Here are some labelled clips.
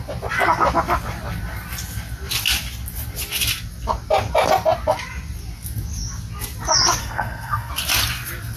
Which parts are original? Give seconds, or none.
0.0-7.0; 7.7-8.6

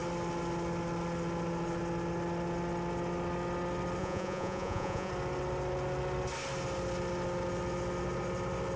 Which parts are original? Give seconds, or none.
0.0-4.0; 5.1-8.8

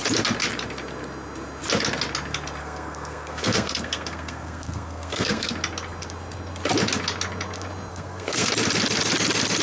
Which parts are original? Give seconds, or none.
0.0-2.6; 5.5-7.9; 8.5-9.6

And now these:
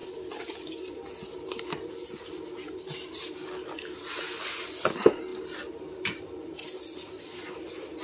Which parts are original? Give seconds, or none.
0.0-8.0